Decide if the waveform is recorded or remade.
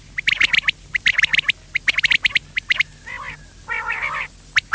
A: recorded